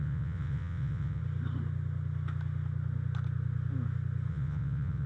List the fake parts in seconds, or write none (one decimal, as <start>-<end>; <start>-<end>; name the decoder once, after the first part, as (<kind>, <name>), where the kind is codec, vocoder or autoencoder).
0.0-1.2 (vocoder, WaveNeXt); 4.3-5.1